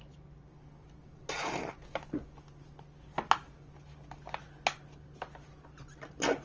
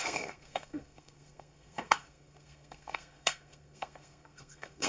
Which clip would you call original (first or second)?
first